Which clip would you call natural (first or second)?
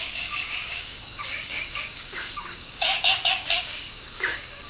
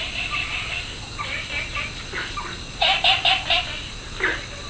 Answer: second